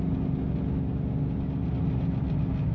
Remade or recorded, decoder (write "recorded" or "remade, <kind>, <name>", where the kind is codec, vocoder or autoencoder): recorded